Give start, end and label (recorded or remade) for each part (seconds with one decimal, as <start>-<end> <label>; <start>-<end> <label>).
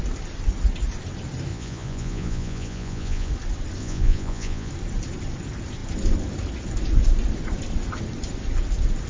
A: 0.0-1.5 recorded; 1.5-3.3 remade; 3.3-3.8 recorded; 3.8-4.7 remade; 4.7-9.1 recorded